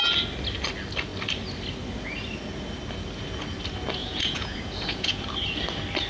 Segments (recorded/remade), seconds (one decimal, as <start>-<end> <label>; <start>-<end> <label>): 0.0-4.0 recorded; 4.0-5.2 remade; 5.2-6.1 recorded